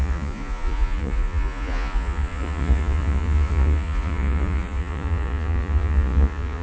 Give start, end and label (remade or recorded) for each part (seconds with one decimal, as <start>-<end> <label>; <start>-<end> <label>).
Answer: 0.0-6.6 remade

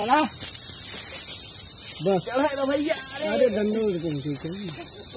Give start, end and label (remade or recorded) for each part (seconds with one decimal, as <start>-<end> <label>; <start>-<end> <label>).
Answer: 0.0-5.2 recorded